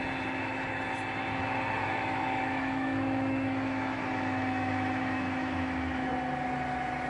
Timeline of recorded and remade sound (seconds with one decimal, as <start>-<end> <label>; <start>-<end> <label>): 0.0-1.8 recorded; 1.8-6.1 remade; 6.1-7.1 recorded